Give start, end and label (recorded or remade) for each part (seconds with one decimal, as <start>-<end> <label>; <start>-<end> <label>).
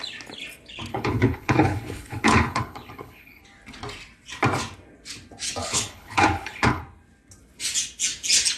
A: 0.0-0.9 recorded; 0.9-3.4 remade; 3.4-5.6 recorded; 5.6-6.8 remade; 6.8-8.6 recorded